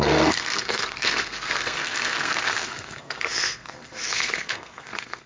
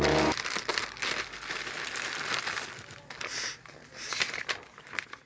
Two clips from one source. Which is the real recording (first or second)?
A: second